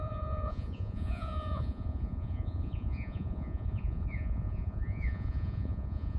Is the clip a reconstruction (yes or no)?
yes